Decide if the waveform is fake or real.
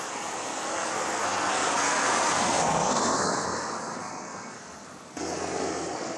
fake